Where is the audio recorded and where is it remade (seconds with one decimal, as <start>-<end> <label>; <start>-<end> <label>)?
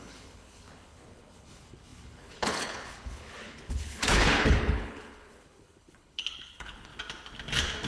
0.0-6.9 remade; 6.9-7.9 recorded